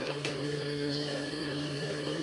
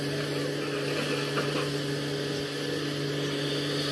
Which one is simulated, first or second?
first